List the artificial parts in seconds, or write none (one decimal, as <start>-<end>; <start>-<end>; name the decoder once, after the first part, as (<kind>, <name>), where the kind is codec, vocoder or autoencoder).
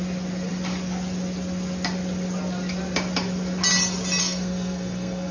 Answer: 4.2-5.3 (codec, SNAC)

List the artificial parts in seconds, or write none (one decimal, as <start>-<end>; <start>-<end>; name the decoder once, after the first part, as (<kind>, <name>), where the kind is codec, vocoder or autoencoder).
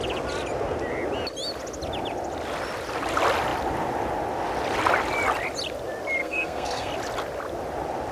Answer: 6.2-6.9 (codec, SNAC)